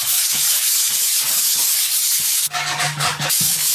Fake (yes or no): yes